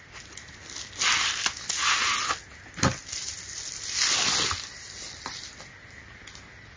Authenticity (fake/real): real